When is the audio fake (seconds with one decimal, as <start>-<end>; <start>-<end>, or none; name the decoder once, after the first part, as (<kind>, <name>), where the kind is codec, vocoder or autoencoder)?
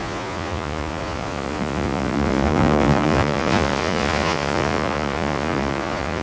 0.0-6.2 (vocoder, Vocos)